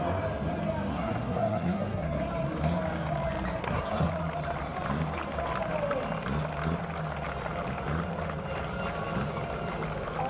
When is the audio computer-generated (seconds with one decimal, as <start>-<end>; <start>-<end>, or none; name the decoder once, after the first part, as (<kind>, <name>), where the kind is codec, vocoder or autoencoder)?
0.9-2.2 (codec, SNAC); 3.6-4.1